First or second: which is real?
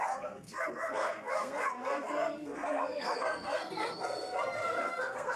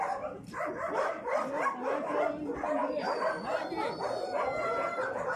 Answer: second